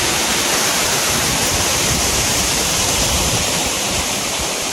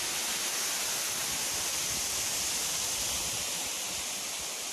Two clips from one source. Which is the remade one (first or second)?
first